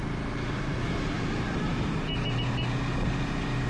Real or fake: real